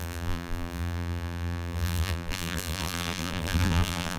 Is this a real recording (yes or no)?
no